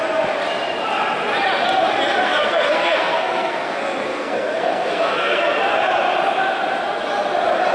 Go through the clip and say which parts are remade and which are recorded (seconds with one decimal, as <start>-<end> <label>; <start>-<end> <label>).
0.0-2.2 recorded; 2.2-5.4 remade; 5.4-7.7 recorded